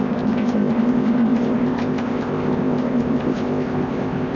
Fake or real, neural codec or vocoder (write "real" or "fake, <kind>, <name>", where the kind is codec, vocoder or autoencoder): fake, codec, ZipCodec